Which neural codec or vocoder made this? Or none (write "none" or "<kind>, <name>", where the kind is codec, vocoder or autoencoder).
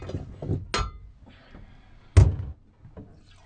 none